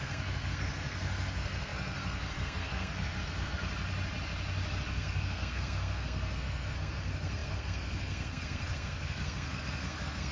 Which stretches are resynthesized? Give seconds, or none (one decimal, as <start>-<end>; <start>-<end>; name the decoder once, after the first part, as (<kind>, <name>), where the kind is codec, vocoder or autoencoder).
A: 0.0-3.7 (codec, SNAC); 4.9-10.3